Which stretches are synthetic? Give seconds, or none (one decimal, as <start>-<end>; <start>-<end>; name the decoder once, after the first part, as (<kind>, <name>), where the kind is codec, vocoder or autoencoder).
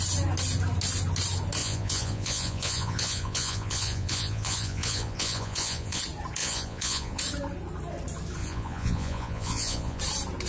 1.6-6.0 (vocoder, Vocos); 6.4-7.2; 8.4-10.0